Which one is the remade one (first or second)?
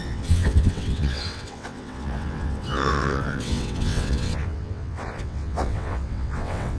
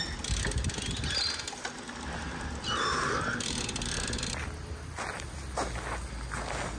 first